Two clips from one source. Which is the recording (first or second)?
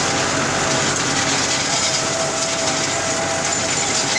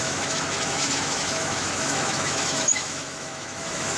first